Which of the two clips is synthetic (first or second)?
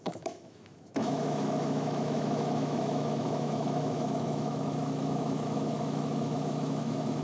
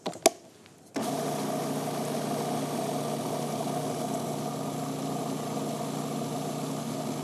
first